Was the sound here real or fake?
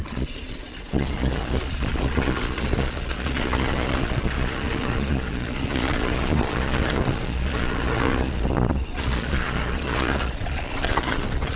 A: fake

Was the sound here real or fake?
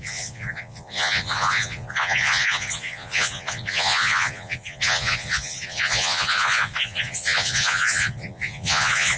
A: fake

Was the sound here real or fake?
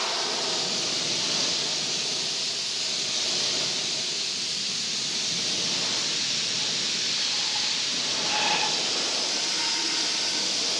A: real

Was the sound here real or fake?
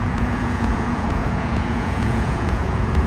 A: fake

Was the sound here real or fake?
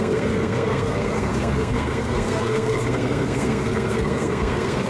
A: fake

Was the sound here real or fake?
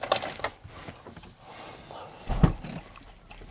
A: real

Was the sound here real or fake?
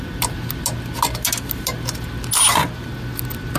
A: real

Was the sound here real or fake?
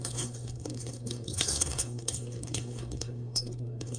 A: fake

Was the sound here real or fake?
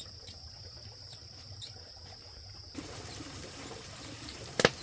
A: fake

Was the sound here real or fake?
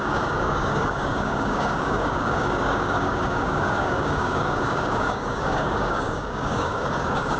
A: fake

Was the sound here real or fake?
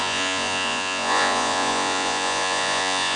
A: fake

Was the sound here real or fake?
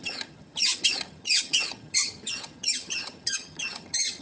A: fake